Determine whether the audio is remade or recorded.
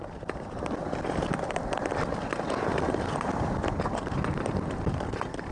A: remade